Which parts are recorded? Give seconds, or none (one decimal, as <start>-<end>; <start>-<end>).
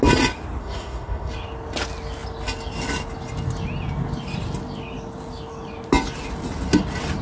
0.0-0.6; 1.3-7.2